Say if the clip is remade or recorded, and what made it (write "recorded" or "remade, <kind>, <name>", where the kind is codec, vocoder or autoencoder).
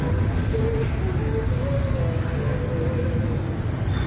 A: recorded